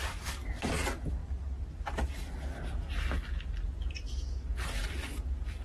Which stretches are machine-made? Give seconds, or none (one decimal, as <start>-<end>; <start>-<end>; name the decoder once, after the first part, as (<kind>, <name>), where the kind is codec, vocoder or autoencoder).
none